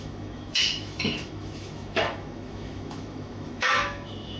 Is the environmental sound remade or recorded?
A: remade